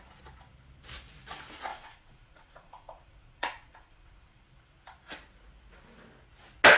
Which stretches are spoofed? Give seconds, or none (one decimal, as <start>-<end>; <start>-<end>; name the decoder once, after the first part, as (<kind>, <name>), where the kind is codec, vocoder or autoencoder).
1.7-4.4 (vocoder, Vocos)